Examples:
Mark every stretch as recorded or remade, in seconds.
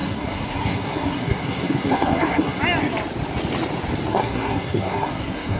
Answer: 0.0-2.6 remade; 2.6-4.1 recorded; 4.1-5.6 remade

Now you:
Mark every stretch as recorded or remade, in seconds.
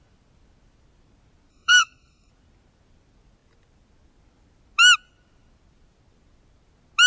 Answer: 0.0-1.5 recorded; 1.5-2.3 remade; 2.3-7.1 recorded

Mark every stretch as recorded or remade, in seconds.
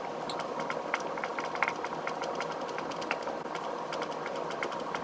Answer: 0.0-5.0 recorded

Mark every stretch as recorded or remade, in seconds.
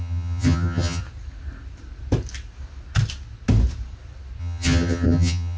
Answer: 0.0-1.0 remade; 1.0-4.4 recorded; 4.4-5.6 remade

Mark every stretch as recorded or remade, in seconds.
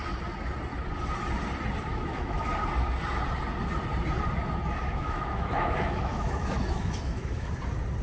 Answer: 0.0-1.9 recorded; 1.9-2.5 remade; 2.5-4.8 recorded; 4.8-7.5 remade; 7.5-8.0 recorded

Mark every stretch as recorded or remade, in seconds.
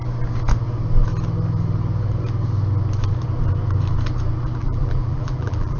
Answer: 0.0-4.6 recorded; 4.6-5.8 remade